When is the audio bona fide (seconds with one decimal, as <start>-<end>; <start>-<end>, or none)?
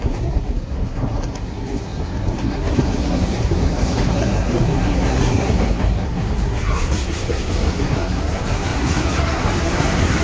none